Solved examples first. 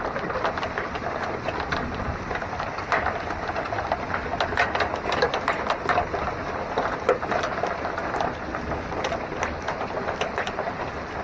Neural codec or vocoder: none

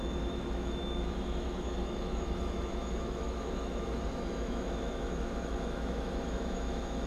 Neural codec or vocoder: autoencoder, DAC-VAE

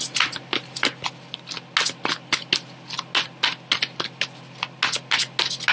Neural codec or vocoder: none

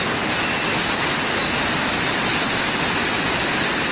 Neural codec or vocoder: none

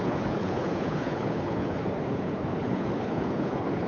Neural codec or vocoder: codec, HILCodec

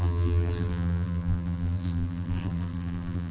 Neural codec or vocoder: vocoder, BigVGAN v2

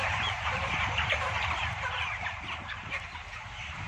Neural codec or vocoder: vocoder, BigVGAN v2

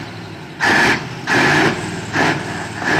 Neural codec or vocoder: none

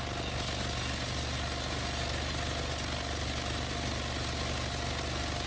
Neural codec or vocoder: none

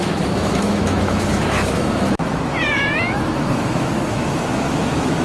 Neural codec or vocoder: autoencoder, DAC-VAE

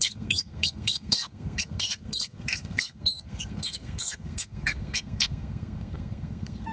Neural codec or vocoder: codec, SNAC